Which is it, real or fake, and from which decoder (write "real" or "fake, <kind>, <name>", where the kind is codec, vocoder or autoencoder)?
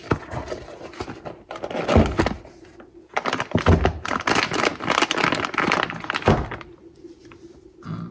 real